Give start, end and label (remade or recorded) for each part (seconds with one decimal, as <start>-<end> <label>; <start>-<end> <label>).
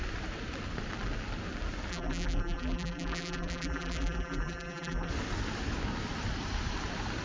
0.0-1.9 recorded; 1.9-5.1 remade; 5.1-7.2 recorded